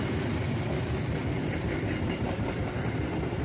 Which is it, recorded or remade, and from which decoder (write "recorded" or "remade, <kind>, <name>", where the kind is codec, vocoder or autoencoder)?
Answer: recorded